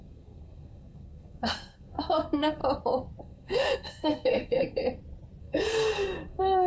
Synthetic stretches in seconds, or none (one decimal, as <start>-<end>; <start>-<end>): 0.0-2.6; 3.2-4.8; 5.4-6.7